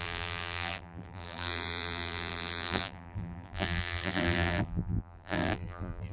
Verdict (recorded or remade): remade